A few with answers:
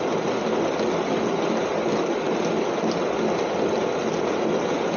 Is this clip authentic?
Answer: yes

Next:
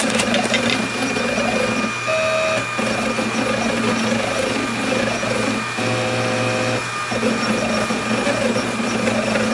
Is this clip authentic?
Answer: yes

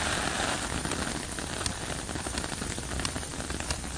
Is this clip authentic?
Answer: yes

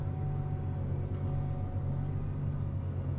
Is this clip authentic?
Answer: yes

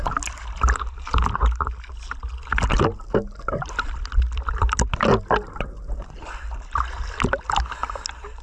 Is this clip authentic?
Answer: yes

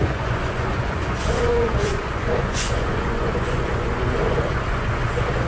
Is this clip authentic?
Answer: no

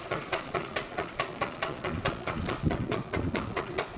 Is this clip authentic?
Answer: no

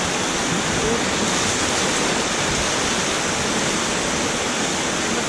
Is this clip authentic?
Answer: yes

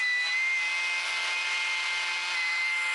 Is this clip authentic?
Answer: yes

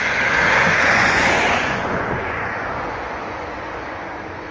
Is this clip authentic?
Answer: no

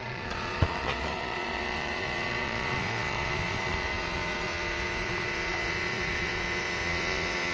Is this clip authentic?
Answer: no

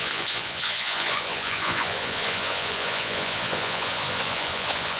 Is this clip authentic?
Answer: no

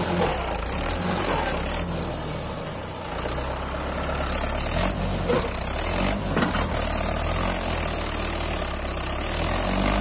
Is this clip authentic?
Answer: yes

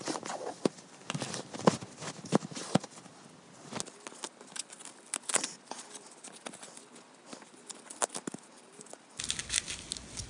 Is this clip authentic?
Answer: yes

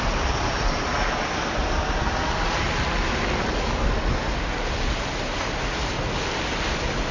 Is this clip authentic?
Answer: yes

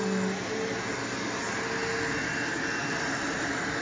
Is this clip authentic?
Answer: yes